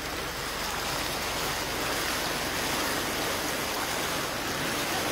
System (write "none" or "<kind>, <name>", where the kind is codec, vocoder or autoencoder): none